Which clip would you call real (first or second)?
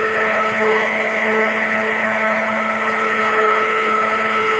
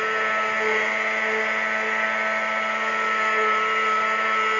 second